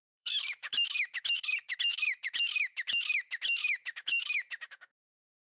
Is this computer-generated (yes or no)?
yes